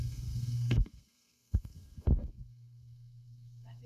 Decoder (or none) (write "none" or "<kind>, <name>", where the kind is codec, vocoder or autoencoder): codec, SNAC